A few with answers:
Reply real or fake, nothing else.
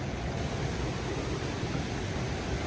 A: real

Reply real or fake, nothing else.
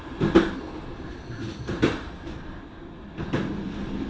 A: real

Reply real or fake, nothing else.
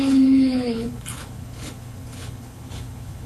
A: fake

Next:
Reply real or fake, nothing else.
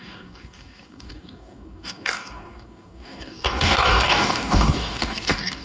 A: fake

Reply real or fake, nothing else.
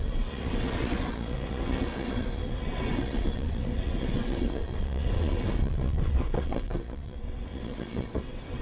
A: fake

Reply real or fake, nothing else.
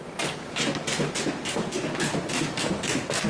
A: real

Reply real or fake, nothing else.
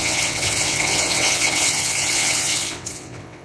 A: fake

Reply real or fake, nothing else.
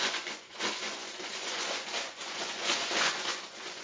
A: fake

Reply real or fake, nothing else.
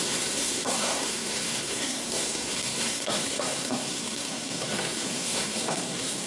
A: fake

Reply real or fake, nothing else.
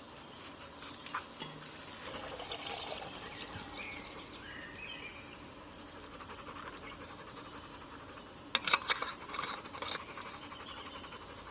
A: real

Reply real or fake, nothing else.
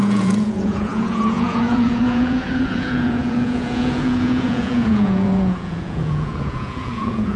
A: fake